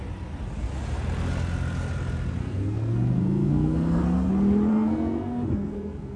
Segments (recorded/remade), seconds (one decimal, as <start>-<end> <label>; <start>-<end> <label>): 0.0-2.4 recorded; 2.4-4.3 remade; 4.3-4.7 recorded; 4.7-6.2 remade